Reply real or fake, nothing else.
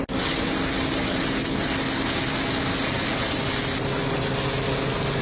real